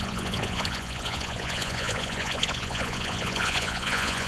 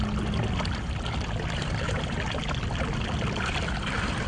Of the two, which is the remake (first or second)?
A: first